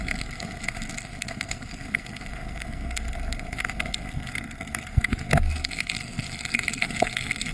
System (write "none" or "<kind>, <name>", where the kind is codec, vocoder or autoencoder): codec, SNAC